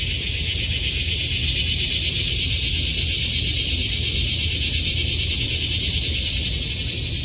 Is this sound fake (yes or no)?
no